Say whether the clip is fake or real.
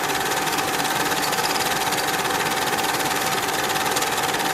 fake